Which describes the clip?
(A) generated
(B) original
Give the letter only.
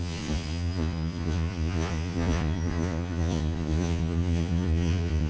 A